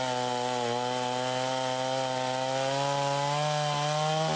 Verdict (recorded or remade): recorded